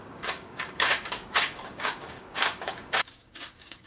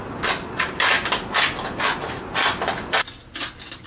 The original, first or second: second